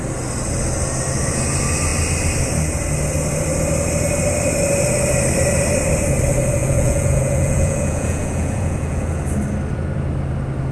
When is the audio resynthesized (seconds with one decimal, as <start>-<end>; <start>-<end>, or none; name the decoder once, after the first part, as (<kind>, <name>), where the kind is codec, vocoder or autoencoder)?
6.6-9.2 (vocoder, Vocos)